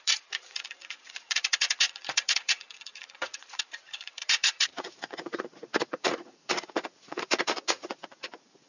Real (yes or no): no